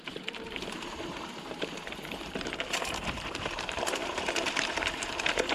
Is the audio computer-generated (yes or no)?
yes